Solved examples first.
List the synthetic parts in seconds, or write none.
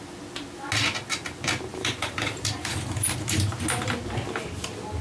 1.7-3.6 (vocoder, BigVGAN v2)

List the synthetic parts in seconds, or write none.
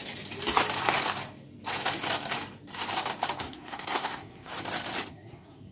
3.4-4.5 (codec, SNAC); 5.1-5.7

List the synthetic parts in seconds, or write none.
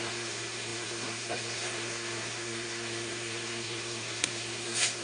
0.0-5.0 (codec, SNAC)